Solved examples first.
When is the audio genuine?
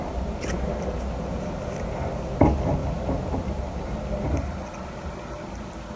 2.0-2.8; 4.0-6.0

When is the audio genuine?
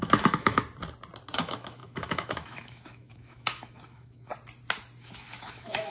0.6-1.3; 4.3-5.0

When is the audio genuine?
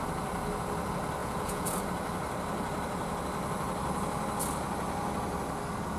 0.0-1.2; 1.8-6.0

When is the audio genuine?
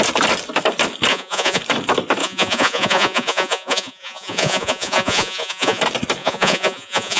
0.0-1.1; 1.6-2.2; 5.8-6.2